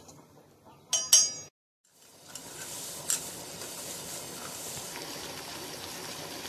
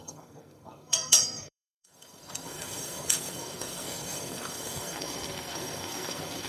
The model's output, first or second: second